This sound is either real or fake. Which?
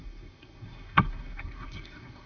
fake